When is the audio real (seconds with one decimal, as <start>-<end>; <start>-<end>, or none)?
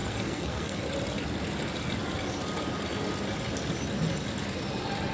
0.8-5.1